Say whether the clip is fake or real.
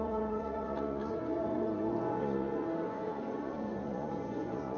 fake